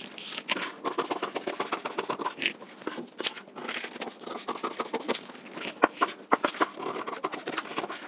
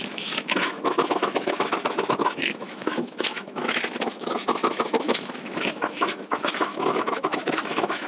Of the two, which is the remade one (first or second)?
second